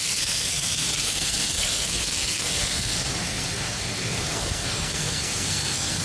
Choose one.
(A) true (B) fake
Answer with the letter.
B